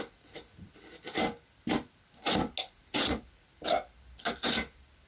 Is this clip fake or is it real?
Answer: real